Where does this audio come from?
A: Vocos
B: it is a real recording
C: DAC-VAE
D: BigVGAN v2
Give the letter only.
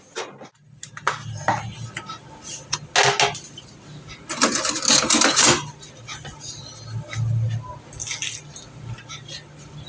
B